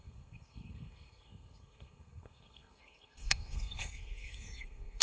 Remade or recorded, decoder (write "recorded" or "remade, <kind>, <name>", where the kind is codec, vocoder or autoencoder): remade, codec, SNAC